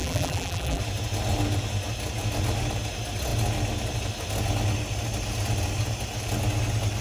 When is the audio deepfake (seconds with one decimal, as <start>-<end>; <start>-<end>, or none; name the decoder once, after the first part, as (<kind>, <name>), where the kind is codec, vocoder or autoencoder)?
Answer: 0.0-0.8 (vocoder, BigVGAN v2)